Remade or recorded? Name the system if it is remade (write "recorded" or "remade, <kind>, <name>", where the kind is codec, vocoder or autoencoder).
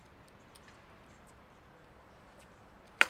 remade, vocoder, BigVGAN v2